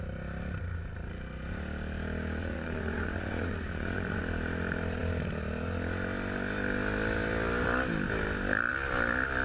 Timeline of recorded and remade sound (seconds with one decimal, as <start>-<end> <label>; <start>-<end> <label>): 0.0-2.4 recorded; 2.4-4.2 remade; 4.2-9.4 recorded